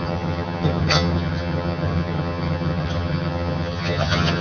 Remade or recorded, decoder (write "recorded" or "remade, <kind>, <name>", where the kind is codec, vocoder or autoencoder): remade, vocoder, HiFi-GAN